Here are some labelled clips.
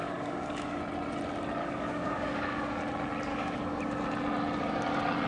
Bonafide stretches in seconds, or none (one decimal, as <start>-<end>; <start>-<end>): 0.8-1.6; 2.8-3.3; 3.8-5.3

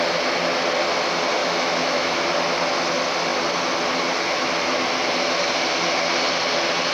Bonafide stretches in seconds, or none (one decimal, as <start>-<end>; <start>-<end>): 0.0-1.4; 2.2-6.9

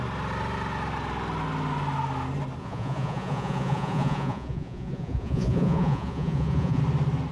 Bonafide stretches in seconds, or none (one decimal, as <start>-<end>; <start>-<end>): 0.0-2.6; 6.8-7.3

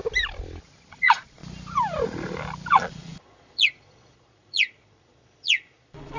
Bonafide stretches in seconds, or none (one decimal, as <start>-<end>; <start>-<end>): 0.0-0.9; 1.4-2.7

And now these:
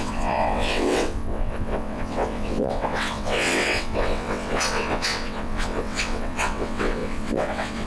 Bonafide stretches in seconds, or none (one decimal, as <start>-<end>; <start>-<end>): none